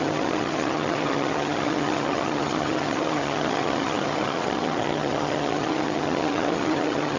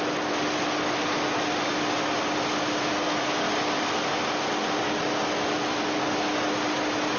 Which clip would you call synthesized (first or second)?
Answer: first